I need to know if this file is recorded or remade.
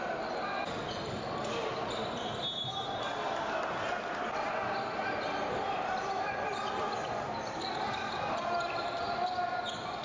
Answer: recorded